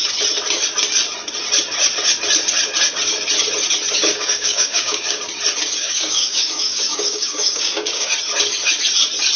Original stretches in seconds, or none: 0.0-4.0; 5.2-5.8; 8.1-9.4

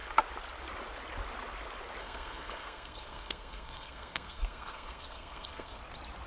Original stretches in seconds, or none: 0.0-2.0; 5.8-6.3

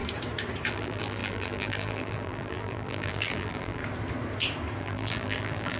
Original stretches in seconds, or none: 0.0-0.7; 3.8-4.8

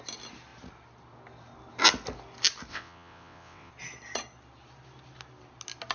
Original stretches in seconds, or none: 0.0-2.7; 3.7-5.9

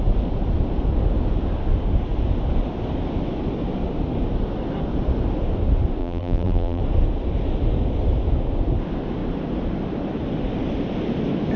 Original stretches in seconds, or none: 0.0-6.0; 6.8-11.6

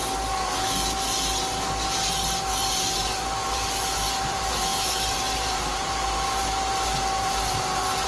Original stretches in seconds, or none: 0.0-2.5

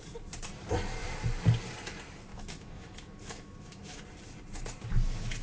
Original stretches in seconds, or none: 0.0-2.3; 4.0-5.4

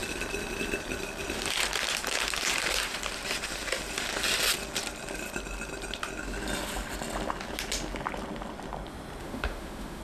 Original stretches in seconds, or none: 0.0-9.2